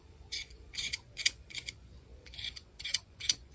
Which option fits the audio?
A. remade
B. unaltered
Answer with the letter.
A